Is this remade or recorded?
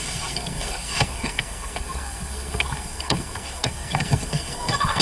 remade